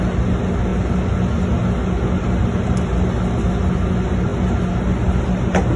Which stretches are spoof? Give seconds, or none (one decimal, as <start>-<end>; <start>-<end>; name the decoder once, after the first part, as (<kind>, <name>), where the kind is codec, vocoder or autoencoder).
none